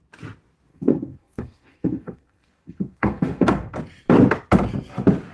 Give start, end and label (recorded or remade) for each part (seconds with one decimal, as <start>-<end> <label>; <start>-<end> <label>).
0.0-0.7 recorded; 0.7-3.7 remade; 3.7-5.3 recorded